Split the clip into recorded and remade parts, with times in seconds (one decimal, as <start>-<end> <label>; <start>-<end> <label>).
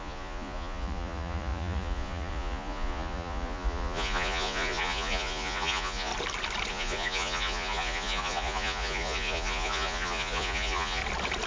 0.0-6.1 remade; 6.1-6.7 recorded; 6.7-11.0 remade; 11.0-11.5 recorded